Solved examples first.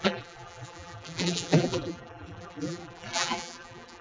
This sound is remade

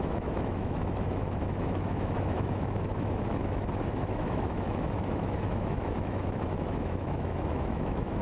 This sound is remade